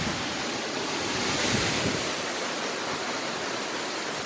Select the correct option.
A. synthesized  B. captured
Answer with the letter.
B